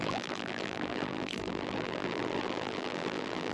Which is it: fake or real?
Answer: fake